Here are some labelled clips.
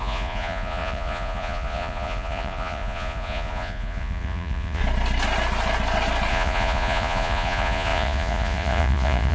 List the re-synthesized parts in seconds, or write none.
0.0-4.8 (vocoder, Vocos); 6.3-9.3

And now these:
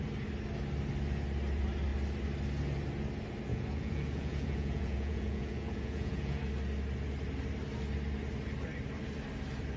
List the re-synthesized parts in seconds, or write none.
3.5-6.4 (vocoder, Vocos)